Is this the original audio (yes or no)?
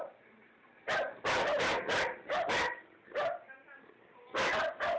yes